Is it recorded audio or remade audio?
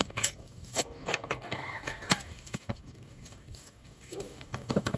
remade